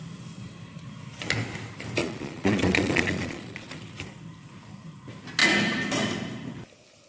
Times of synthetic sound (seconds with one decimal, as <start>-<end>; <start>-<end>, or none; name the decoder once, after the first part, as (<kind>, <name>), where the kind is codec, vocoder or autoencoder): 2.0-3.7 (vocoder, Vocos)